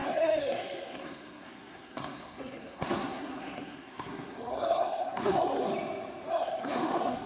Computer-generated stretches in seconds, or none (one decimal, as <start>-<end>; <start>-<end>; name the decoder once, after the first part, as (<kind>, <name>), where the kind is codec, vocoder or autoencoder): 0.0-5.7 (codec, SNAC); 6.3-7.3